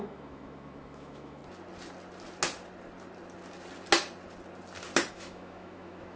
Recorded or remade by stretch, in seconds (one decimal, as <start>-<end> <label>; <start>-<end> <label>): 0.0-1.4 remade; 1.4-5.1 recorded; 5.1-6.2 remade